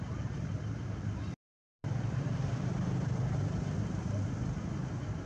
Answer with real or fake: fake